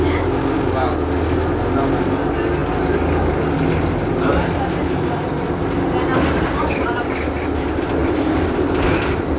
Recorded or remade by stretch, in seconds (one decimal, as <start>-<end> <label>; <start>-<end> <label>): 0.0-8.0 recorded; 8.0-9.4 remade